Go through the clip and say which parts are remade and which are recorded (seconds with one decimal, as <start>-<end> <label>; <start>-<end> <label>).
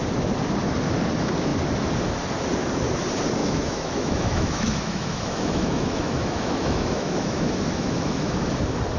0.0-3.4 recorded; 3.4-8.6 remade; 8.6-9.0 recorded